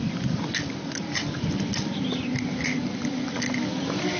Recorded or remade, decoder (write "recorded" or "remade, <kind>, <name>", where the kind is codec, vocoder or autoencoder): recorded